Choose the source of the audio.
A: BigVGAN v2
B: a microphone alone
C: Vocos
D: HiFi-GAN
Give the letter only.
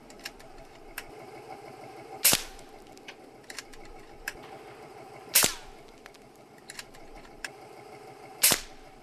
A